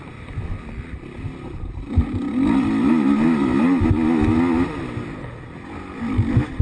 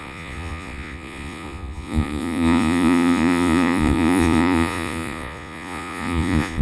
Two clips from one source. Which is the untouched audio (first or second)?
first